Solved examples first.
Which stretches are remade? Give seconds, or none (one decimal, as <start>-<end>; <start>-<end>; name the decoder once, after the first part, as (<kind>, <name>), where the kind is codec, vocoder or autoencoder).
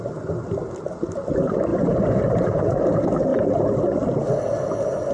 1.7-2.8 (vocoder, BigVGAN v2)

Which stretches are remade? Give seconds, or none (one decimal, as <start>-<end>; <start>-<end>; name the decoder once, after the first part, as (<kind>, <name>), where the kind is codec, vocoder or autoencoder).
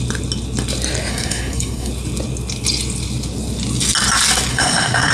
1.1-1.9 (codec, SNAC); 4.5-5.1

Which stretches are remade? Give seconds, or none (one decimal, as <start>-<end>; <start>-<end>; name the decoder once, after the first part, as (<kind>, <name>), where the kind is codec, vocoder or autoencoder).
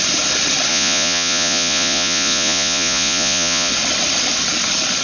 0.7-3.7 (vocoder, Vocos)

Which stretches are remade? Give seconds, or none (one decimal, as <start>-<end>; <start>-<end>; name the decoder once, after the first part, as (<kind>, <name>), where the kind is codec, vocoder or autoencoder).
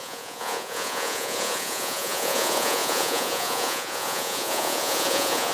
0.0-5.5 (vocoder, Vocos)